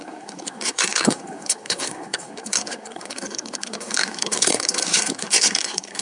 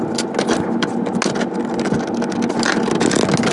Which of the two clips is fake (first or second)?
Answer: first